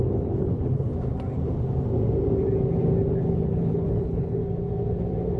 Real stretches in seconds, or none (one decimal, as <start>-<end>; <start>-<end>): 0.9-3.1; 4.4-5.4